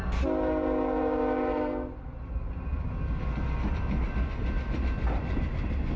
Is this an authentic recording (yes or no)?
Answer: yes